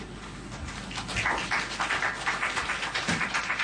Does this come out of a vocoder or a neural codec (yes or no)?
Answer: no